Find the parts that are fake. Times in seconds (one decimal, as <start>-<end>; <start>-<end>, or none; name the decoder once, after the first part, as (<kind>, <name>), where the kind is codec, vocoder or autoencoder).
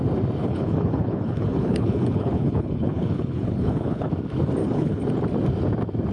0.4-4.1 (codec, HILCodec); 4.6-5.1